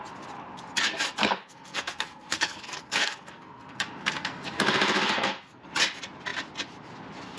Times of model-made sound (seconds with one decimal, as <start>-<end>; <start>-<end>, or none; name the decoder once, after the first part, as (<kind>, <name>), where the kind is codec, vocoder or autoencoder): 1.2-5.6 (codec, SNAC)